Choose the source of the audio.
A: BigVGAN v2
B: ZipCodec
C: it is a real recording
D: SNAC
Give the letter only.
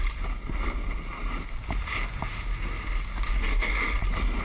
C